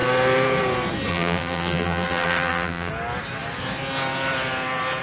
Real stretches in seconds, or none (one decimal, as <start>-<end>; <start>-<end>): 0.0-1.1; 2.9-5.0